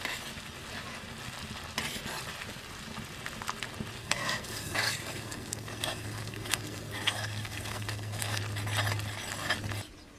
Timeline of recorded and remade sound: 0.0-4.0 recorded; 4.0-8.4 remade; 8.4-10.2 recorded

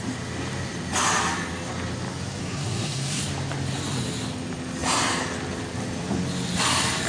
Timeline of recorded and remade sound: 0.0-2.4 recorded; 2.4-3.2 remade; 3.2-7.1 recorded

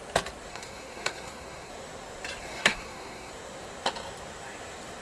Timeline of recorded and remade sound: 0.0-0.5 recorded; 0.5-1.7 remade; 1.7-2.4 recorded; 2.4-3.3 remade; 3.3-5.0 recorded

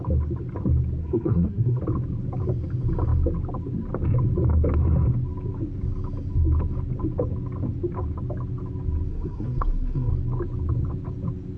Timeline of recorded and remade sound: 0.0-1.0 recorded; 1.0-1.8 remade; 1.8-9.1 recorded; 9.1-10.1 remade; 10.1-11.6 recorded

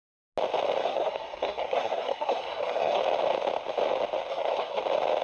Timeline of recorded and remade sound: 0.0-0.8 recorded; 0.8-3.0 remade; 3.0-4.3 recorded; 4.3-4.8 remade; 4.8-5.2 recorded

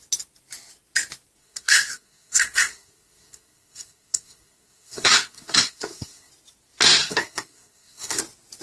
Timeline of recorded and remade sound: 0.0-1.4 recorded; 1.4-6.3 remade; 6.3-7.0 recorded; 7.0-8.2 remade; 8.2-8.6 recorded

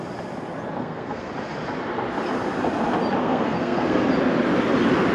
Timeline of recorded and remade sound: 0.0-0.8 recorded; 0.8-1.3 remade; 1.3-3.2 recorded; 3.2-4.0 remade; 4.0-5.1 recorded

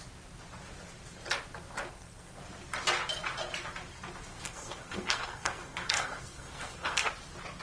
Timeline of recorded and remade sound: 0.0-1.9 recorded; 1.9-2.4 remade; 2.4-4.3 recorded; 4.3-7.1 remade; 7.1-7.6 recorded